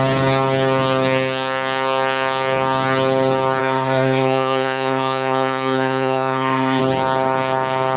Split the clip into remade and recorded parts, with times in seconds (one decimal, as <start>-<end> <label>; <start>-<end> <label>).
0.0-3.6 recorded; 3.6-6.8 remade; 6.8-8.0 recorded